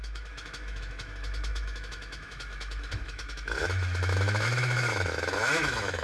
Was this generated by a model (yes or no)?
yes